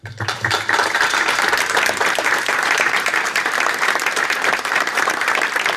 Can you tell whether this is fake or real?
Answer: fake